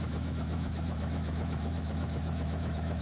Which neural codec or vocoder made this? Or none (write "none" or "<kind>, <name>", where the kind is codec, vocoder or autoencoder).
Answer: autoencoder, DAC-VAE